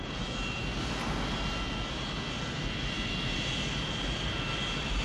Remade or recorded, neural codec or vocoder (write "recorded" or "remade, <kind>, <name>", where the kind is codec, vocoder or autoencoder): recorded